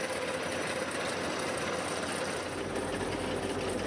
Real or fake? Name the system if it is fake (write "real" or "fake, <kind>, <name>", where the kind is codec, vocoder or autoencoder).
real